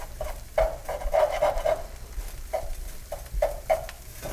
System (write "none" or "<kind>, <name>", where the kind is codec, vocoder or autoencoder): none